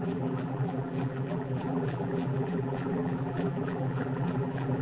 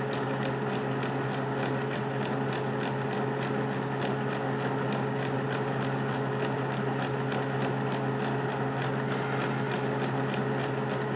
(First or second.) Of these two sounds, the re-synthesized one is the first